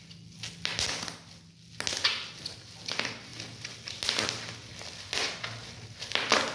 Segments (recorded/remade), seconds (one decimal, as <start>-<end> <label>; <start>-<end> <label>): 0.0-6.5 recorded